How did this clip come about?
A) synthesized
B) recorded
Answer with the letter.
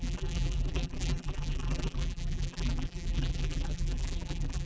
A